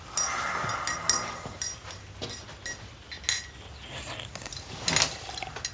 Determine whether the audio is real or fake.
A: real